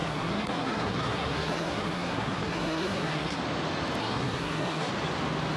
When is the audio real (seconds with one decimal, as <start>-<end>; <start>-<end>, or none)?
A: 3.4-4.0; 4.9-5.6